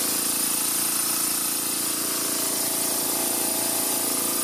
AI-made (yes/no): no